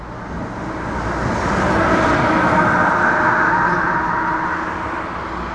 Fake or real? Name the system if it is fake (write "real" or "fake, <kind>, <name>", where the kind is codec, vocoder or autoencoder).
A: real